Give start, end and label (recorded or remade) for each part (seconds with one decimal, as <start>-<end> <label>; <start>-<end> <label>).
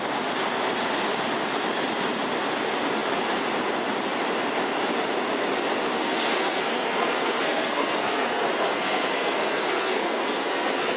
0.0-5.9 recorded; 5.9-11.0 remade